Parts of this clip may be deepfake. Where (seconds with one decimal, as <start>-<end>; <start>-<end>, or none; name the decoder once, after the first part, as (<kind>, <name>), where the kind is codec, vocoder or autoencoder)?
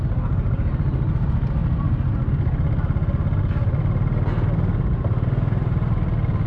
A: none